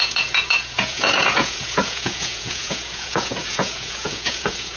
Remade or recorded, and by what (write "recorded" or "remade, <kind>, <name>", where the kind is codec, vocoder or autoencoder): remade, vocoder, Vocos